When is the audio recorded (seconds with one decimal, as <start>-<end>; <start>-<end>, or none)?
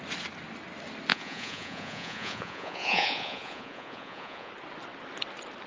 0.0-1.1; 4.5-5.7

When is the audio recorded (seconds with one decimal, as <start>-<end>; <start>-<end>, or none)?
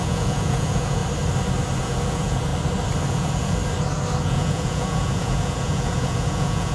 1.0-1.8; 2.5-3.1; 3.6-4.2